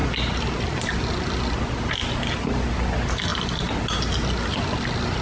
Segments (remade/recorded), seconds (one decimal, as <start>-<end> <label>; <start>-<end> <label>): 0.0-5.2 recorded

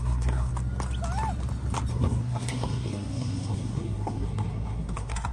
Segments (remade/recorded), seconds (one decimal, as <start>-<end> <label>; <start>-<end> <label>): 0.0-0.5 remade; 0.5-1.9 recorded; 1.9-5.3 remade